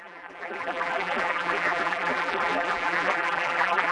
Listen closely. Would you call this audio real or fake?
fake